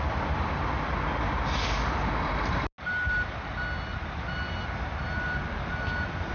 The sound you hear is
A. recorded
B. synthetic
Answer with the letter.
A